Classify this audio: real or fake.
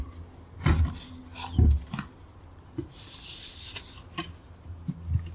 real